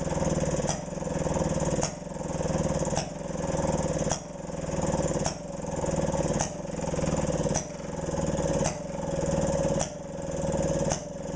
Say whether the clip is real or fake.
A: real